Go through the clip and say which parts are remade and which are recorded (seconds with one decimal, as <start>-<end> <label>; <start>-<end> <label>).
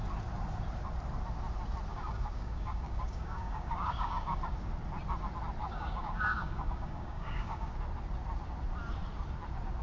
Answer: 0.0-1.9 recorded; 1.9-4.4 remade; 4.4-5.6 recorded; 5.6-7.7 remade; 7.7-9.8 recorded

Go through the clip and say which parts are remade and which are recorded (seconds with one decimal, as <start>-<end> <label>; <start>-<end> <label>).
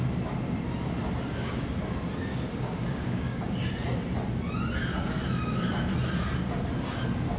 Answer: 0.0-2.3 recorded; 2.3-3.7 remade; 3.7-7.4 recorded